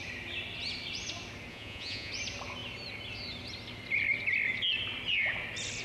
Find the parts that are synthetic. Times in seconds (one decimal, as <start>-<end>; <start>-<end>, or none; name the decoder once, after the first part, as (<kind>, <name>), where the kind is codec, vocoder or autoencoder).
1.5-2.1 (vocoder, Vocos)